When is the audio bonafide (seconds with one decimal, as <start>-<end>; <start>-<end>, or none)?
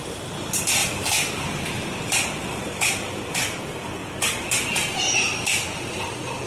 0.0-0.8; 3.6-4.0; 4.7-6.5